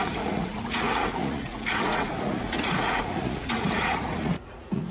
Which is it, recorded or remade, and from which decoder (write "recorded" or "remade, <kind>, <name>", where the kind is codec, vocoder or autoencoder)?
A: remade, vocoder, Vocos